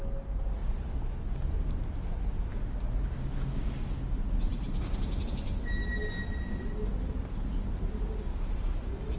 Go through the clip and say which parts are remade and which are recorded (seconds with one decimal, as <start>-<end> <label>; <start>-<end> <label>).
0.0-4.5 recorded; 4.5-5.6 remade; 5.6-8.3 recorded; 8.3-9.2 remade

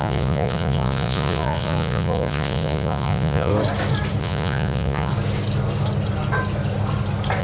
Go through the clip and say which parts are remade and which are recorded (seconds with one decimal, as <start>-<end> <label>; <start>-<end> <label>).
0.0-3.5 remade; 3.5-4.2 recorded; 4.2-5.1 remade; 5.1-7.4 recorded

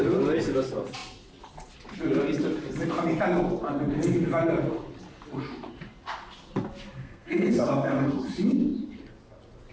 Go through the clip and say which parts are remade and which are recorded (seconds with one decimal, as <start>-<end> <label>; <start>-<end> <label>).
0.0-7.0 recorded; 7.0-8.2 remade; 8.2-9.7 recorded

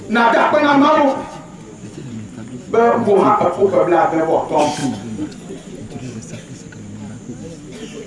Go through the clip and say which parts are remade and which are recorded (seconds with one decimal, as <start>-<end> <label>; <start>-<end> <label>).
0.0-0.7 recorded; 0.7-1.4 remade; 1.4-1.8 recorded; 1.8-3.7 remade; 3.7-8.1 recorded